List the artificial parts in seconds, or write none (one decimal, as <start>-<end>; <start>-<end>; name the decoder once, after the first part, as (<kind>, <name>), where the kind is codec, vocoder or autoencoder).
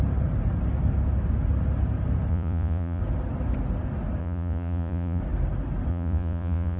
2.3-3.0 (vocoder, Vocos); 4.2-5.2; 5.9-6.8